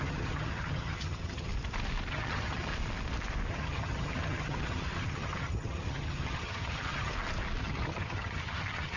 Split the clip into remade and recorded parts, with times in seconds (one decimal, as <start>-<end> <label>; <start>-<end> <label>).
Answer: 0.0-1.5 remade; 1.5-2.1 recorded; 2.1-2.7 remade; 2.7-3.5 recorded; 3.5-7.1 remade; 7.1-7.6 recorded; 7.6-9.0 remade